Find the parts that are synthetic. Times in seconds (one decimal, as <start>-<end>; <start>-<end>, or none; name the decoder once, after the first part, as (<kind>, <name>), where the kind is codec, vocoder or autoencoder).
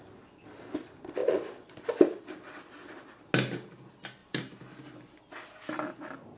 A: 4.2-5.2 (vocoder, BigVGAN v2)